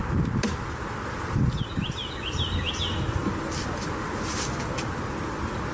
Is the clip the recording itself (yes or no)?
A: yes